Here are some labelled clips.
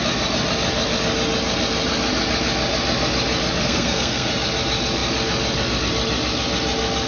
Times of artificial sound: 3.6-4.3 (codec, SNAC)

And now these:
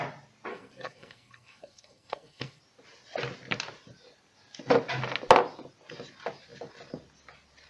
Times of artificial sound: 0.5-2.6 (codec, SNAC)

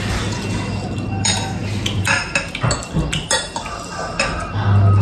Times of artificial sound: none

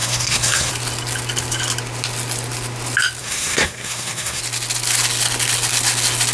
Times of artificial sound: 0.0-0.7 (codec, SNAC); 3.2-4.4

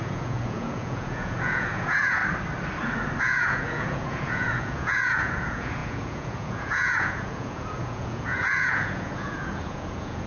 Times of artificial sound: 0.0-2.2 (vocoder, Vocos); 3.2-10.3

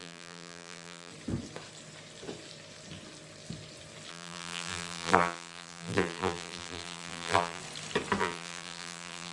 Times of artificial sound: 0.0-1.1 (vocoder, BigVGAN v2); 4.1-7.6; 8.2-9.3

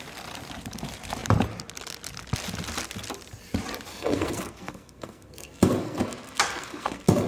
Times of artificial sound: 3.9-7.3 (codec, SNAC)